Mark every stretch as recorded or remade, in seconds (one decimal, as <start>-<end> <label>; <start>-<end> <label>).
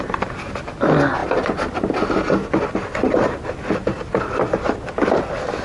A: 0.0-5.6 recorded